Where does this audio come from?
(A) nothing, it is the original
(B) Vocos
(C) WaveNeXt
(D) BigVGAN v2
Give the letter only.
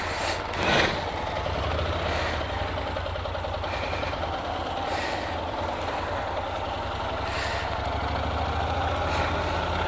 A